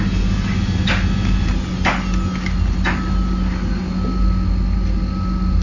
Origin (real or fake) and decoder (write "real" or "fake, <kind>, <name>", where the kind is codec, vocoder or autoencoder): real